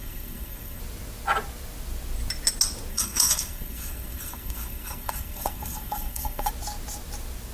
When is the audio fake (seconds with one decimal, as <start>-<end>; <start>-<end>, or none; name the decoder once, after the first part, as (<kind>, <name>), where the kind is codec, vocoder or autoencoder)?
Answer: 0.0-0.8 (codec, SNAC); 2.9-6.5